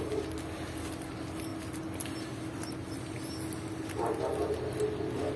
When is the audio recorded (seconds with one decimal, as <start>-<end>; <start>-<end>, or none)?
0.0-5.4